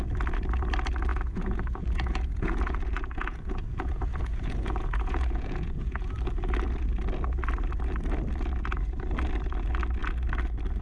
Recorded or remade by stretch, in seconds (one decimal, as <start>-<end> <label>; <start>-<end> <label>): 0.0-1.1 recorded; 1.1-6.1 remade; 6.1-10.8 recorded